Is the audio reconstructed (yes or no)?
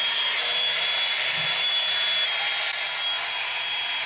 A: no